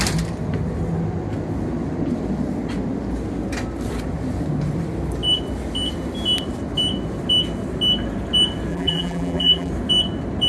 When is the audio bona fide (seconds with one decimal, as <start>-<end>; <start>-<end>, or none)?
0.0-8.7; 9.7-10.5